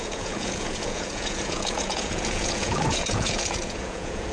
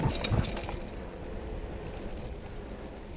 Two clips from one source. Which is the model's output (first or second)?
first